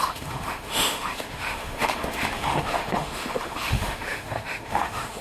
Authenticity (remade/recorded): remade